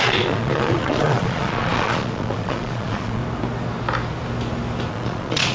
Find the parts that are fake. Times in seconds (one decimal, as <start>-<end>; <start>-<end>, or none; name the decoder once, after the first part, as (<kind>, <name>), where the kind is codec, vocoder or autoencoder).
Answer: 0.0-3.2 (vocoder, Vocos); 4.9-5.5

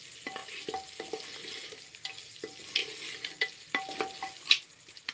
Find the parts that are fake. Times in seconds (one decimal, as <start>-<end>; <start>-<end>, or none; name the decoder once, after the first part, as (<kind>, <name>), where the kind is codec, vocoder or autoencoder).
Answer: none

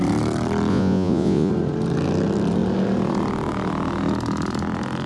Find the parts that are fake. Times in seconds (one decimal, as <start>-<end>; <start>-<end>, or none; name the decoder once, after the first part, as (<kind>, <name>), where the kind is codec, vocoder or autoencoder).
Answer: 0.7-1.5 (vocoder, Vocos)

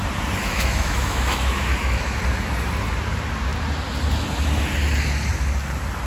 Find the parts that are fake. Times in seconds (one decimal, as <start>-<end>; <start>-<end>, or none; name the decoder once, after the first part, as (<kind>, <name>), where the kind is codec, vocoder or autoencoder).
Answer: 0.4-2.2 (autoencoder, DAC-VAE)